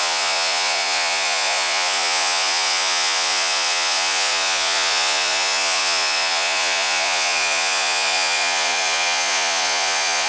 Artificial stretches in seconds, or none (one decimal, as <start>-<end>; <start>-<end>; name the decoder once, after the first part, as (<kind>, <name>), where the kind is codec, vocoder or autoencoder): 0.0-10.3 (vocoder, Vocos)